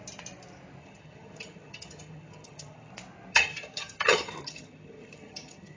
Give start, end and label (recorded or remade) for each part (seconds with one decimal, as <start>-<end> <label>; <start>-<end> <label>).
0.0-0.8 recorded; 0.8-2.9 remade; 2.9-3.3 recorded; 3.3-5.8 remade